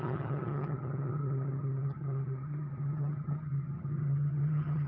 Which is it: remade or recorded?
remade